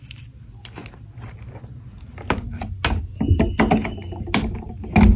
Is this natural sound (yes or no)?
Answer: yes